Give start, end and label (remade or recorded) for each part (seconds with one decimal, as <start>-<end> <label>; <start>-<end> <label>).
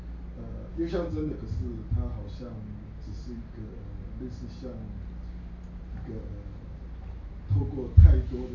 0.0-0.7 recorded; 0.7-1.3 remade; 1.3-8.5 recorded